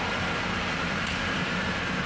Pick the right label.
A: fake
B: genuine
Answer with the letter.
A